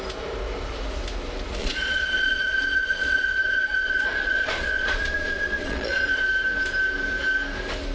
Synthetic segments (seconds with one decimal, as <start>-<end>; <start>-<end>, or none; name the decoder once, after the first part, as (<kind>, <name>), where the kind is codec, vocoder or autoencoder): 1.6-6.2 (vocoder, Vocos)